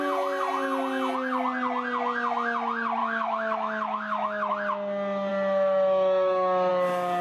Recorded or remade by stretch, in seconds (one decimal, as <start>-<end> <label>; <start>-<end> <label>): 0.0-3.0 recorded; 3.0-4.5 remade; 4.5-5.3 recorded; 5.3-6.7 remade; 6.7-7.2 recorded